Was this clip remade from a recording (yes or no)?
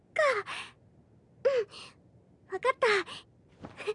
no